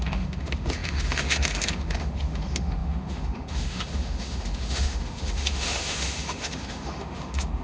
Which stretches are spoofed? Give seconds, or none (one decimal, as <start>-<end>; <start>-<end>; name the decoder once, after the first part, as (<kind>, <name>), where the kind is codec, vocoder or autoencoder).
0.0-7.6 (autoencoder, DAC-VAE)